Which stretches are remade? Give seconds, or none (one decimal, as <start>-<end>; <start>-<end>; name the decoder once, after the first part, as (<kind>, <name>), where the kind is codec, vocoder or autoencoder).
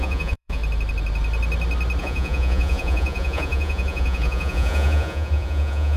0.0-0.6 (vocoder, Vocos); 2.0-6.0